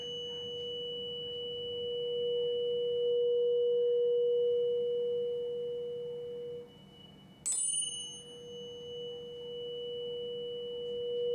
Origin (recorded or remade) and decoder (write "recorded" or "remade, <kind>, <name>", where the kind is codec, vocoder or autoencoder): recorded